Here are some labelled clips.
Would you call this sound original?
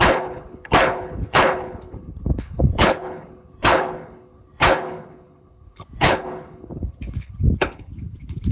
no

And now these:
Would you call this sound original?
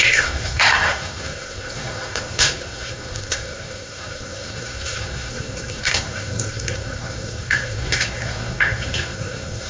no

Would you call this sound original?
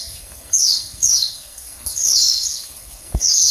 no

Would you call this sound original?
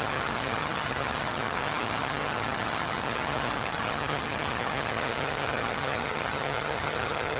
no